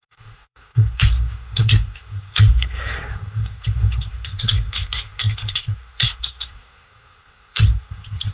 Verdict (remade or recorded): remade